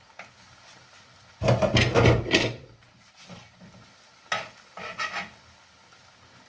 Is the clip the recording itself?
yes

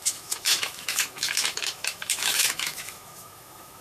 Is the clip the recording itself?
no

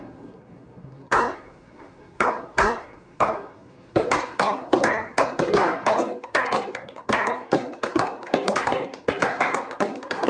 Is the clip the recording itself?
no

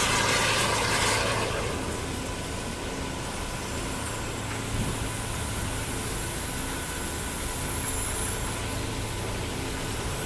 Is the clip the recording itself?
yes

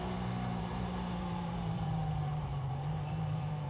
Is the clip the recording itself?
no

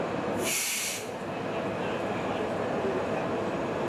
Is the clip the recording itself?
yes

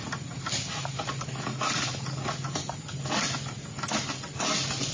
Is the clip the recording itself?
yes